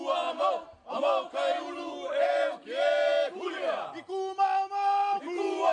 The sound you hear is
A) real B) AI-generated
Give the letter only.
A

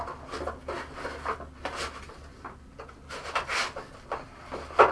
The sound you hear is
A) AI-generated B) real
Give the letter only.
B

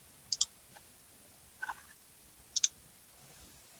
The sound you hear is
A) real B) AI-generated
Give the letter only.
A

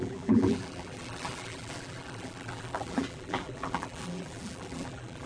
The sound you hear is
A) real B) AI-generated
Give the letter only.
B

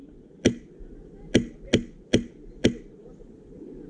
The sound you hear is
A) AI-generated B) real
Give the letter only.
B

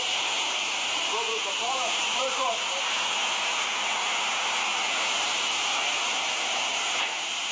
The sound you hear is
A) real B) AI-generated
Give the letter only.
A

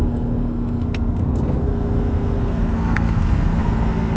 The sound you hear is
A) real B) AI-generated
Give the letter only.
B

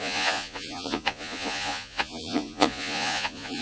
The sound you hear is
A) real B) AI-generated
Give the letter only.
B